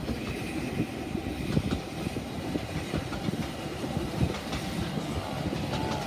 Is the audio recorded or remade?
recorded